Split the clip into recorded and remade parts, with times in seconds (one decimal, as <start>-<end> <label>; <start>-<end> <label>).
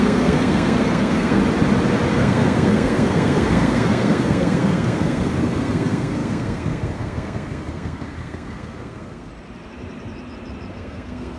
0.0-1.4 remade; 1.4-2.1 recorded; 2.1-9.3 remade; 9.3-10.7 recorded; 10.7-11.4 remade